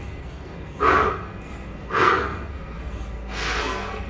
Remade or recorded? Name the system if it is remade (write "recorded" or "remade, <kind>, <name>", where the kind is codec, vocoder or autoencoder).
remade, codec, SNAC